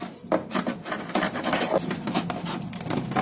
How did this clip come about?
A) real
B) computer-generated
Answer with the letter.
A